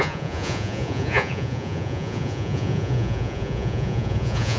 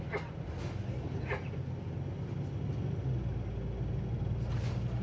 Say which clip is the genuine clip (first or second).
second